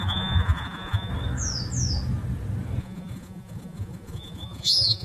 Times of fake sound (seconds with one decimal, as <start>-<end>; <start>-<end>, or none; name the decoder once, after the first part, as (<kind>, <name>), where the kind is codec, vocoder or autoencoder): 0.0-1.1 (vocoder, Vocos); 2.8-5.0